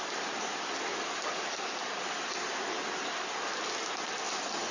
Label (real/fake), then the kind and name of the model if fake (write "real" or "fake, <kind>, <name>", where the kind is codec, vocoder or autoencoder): real